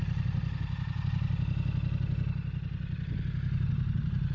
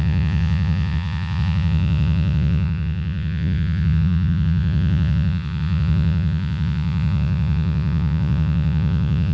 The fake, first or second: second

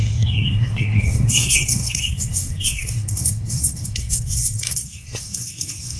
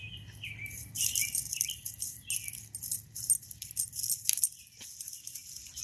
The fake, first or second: first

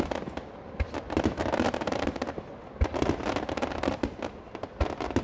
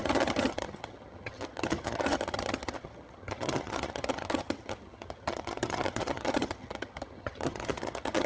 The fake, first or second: second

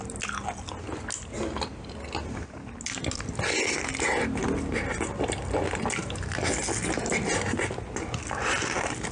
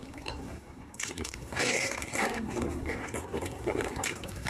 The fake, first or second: second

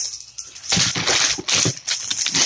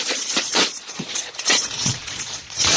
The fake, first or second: second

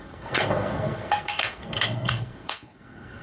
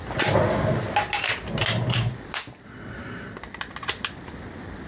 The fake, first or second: first